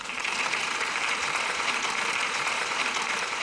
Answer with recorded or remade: remade